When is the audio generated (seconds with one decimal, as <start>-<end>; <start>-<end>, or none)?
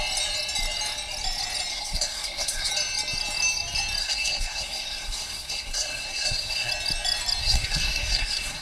1.7-2.7; 4.0-6.7; 7.4-8.6